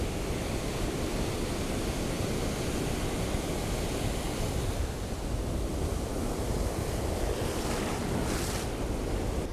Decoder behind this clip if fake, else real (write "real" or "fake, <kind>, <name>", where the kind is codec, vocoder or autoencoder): real